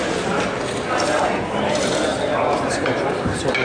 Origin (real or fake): real